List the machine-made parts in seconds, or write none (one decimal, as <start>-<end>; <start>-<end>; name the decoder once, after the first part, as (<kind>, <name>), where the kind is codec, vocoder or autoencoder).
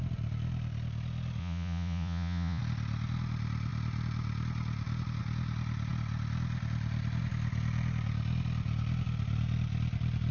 1.4-2.6 (vocoder, Vocos)